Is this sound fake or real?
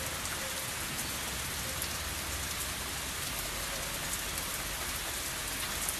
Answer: real